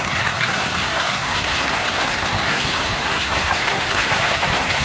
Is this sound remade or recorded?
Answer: remade